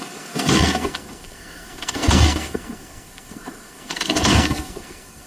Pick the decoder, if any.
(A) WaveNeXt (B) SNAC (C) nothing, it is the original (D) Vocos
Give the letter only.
B